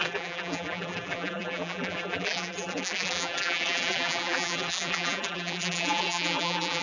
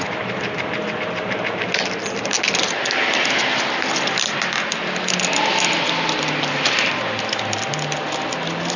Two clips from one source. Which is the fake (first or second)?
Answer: first